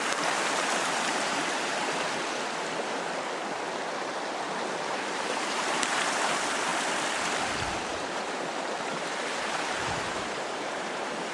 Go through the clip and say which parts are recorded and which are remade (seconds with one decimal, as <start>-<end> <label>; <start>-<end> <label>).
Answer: 0.0-1.8 remade; 1.8-4.9 recorded; 4.9-6.7 remade; 6.7-7.8 recorded; 7.8-11.3 remade